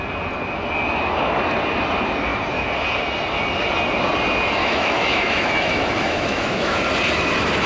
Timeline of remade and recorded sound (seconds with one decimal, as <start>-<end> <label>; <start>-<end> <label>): 0.0-4.6 recorded; 4.6-6.8 remade; 6.8-7.7 recorded